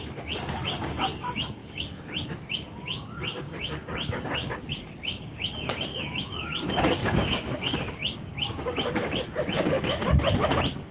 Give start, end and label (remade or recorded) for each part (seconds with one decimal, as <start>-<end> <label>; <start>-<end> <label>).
0.0-10.0 remade; 10.0-10.9 recorded